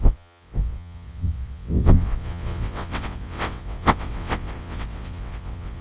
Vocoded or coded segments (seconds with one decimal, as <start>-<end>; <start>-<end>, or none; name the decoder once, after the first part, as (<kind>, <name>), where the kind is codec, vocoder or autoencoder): 0.0-5.8 (vocoder, WaveNeXt)